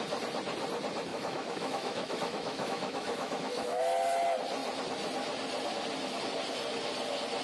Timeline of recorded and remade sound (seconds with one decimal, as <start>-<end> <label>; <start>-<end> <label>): 0.0-1.1 recorded; 1.1-3.8 remade; 3.8-7.4 recorded